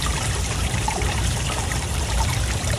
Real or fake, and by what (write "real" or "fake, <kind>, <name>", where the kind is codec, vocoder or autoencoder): fake, vocoder, BigVGAN v2